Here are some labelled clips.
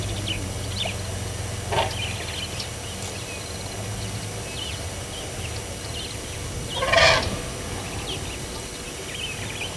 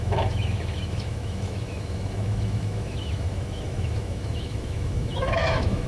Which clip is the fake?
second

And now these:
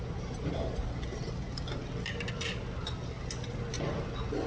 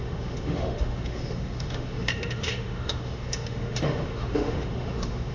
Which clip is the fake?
second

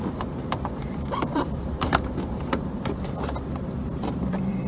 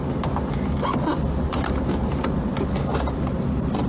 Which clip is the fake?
first